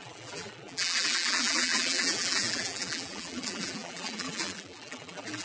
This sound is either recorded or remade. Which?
remade